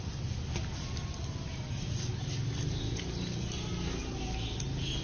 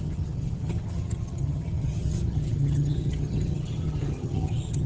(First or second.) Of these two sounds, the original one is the first